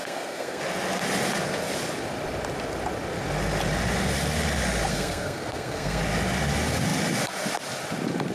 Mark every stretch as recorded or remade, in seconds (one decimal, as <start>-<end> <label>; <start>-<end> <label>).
0.0-0.6 remade; 0.6-4.9 recorded; 4.9-6.0 remade; 6.0-8.3 recorded